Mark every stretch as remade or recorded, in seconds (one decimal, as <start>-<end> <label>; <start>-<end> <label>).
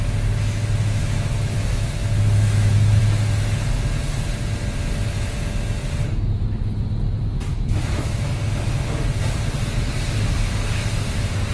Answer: 0.0-1.0 recorded; 1.0-3.0 remade; 3.0-7.5 recorded; 7.5-8.3 remade; 8.3-11.5 recorded